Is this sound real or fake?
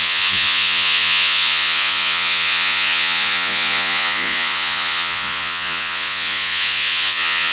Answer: fake